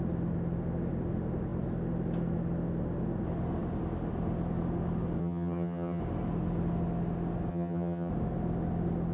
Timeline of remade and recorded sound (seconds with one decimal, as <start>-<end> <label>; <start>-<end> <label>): 0.0-5.2 recorded; 5.2-6.0 remade; 6.0-7.5 recorded; 7.5-8.1 remade; 8.1-9.1 recorded